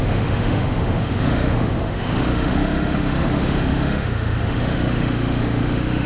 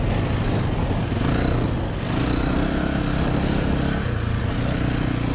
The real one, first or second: second